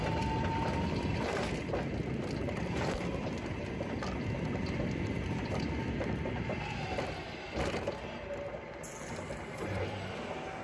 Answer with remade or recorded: recorded